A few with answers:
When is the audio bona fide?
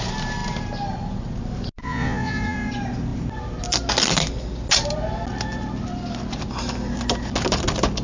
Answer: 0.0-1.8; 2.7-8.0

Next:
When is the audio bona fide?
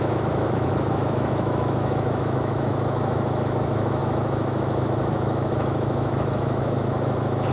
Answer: none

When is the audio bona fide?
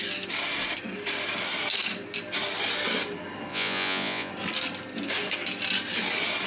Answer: 0.0-3.5; 4.3-6.5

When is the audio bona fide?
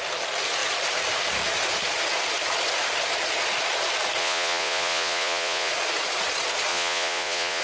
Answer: 0.0-4.2; 5.7-6.7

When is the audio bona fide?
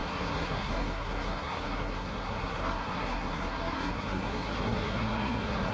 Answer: none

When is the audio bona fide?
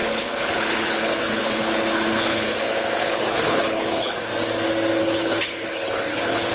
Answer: 4.3-5.0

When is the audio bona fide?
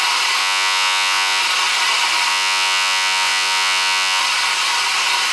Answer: 0.0-0.4; 1.4-2.3; 4.2-5.3